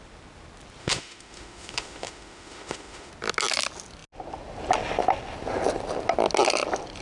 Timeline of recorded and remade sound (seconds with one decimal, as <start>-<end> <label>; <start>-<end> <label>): 0.0-0.8 recorded; 0.8-3.1 remade; 3.1-7.0 recorded